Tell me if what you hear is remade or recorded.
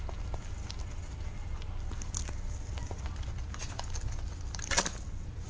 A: recorded